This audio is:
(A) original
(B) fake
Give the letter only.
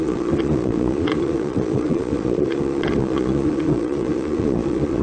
B